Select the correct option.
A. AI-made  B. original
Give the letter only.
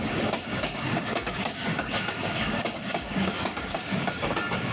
A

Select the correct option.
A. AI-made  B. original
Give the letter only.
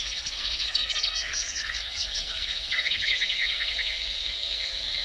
A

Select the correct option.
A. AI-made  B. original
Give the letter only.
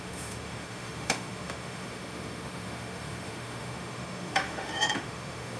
A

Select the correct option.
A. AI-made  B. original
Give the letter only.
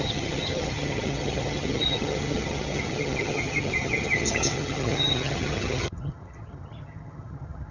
A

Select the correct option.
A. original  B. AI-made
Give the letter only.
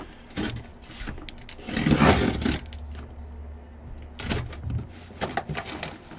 A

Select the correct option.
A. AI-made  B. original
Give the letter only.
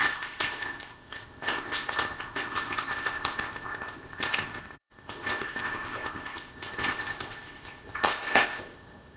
A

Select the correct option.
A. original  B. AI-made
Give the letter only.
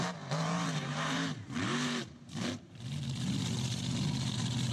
B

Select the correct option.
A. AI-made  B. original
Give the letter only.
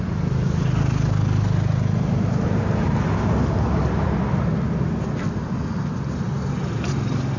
B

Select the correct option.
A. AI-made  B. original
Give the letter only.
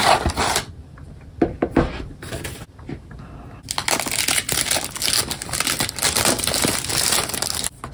B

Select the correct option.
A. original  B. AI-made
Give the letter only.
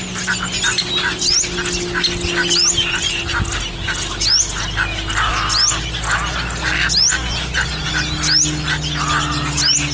A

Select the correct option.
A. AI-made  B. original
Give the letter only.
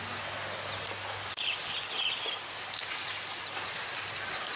B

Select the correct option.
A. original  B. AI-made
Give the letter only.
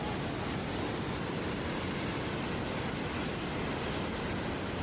A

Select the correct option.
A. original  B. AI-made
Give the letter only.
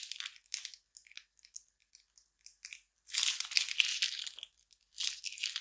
A